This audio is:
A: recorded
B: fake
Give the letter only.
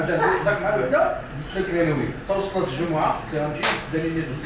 A